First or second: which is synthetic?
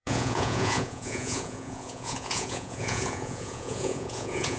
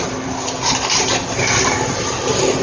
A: first